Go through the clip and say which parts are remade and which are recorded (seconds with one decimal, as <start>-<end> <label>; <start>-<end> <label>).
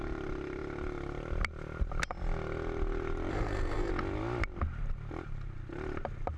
0.0-3.3 recorded; 3.3-3.9 remade; 3.9-6.4 recorded